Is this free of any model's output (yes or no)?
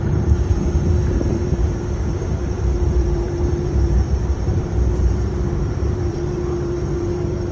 no